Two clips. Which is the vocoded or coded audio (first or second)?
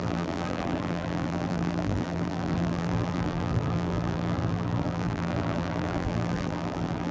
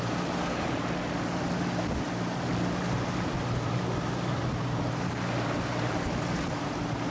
first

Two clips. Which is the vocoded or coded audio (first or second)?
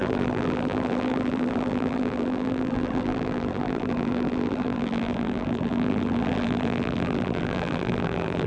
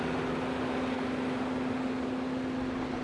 first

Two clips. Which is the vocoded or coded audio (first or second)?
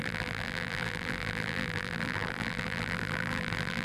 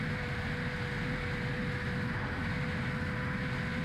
first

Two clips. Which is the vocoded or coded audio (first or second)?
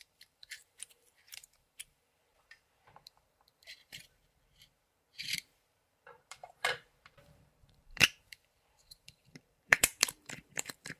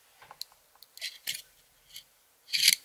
first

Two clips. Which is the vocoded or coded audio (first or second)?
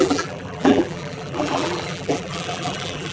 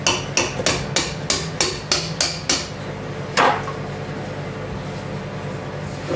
first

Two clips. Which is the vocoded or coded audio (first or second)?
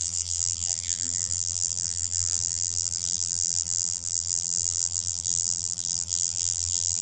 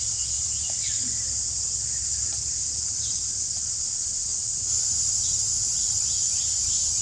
first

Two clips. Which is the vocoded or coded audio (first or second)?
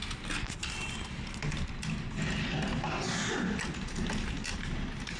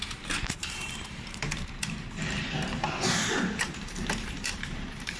second